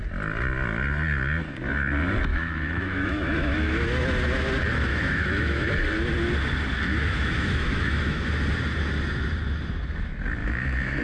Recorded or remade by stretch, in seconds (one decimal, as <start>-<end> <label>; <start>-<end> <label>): 0.0-2.3 recorded; 2.3-4.0 remade; 4.0-4.9 recorded; 4.9-5.7 remade; 5.7-6.9 recorded; 6.9-8.3 remade; 8.3-10.4 recorded; 10.4-11.0 remade